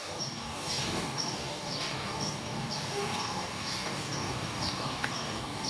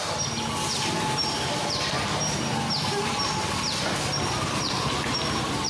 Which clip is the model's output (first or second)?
first